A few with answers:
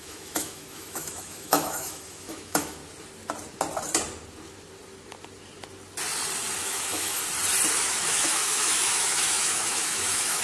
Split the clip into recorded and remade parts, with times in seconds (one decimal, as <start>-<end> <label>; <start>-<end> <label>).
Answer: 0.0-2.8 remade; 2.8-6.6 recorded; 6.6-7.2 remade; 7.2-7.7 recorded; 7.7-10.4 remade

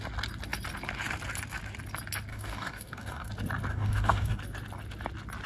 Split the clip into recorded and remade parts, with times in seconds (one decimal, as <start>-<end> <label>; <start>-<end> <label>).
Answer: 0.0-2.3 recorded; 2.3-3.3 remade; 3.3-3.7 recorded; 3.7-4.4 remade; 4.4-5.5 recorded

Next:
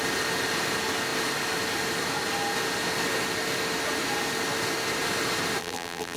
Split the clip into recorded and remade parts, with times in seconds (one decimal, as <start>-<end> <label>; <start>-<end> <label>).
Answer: 0.0-5.6 recorded; 5.6-6.2 remade